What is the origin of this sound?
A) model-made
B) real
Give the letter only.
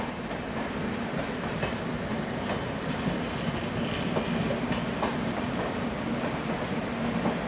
B